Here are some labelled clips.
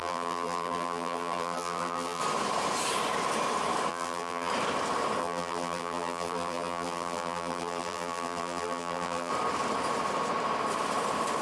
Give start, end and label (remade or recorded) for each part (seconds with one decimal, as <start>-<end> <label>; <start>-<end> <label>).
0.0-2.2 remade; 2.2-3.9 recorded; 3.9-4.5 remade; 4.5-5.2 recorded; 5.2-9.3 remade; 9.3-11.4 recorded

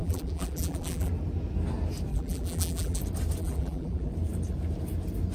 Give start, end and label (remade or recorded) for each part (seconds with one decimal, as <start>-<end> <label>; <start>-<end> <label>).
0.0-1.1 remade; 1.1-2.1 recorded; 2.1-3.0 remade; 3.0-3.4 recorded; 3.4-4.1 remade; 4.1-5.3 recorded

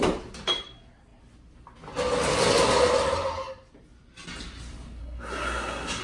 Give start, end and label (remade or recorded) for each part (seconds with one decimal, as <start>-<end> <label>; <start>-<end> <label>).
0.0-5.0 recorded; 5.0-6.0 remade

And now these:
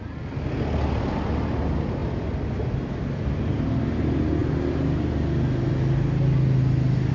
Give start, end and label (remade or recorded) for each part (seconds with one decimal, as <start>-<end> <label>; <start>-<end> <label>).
0.0-7.1 recorded

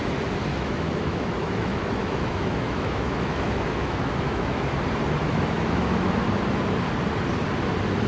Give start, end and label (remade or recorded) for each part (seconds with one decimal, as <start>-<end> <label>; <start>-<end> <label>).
0.0-0.5 recorded; 0.5-4.7 remade; 4.7-5.2 recorded; 5.2-6.1 remade; 6.1-8.1 recorded

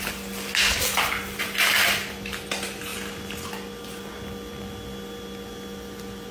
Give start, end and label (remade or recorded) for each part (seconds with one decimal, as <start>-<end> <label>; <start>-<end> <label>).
0.0-6.3 recorded

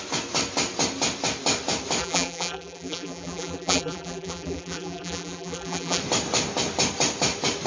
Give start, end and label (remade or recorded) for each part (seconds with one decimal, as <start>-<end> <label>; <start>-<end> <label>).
0.0-2.0 recorded; 2.0-6.0 remade; 6.0-7.7 recorded

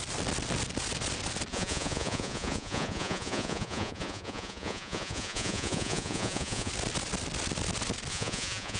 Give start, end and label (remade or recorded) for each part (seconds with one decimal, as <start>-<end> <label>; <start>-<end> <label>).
0.0-1.5 recorded; 1.5-6.7 remade; 6.7-8.1 recorded; 8.1-8.8 remade